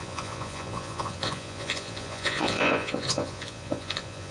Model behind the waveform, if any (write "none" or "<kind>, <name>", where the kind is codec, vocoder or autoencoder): vocoder, Vocos